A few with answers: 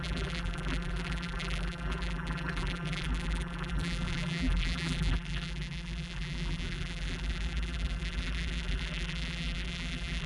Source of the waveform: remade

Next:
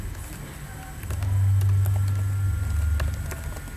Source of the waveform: recorded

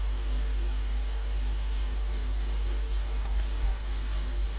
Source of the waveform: remade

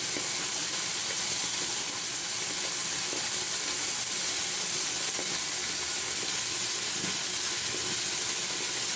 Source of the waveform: recorded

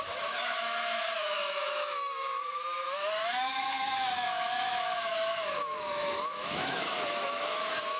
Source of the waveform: remade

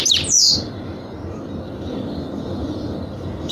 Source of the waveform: remade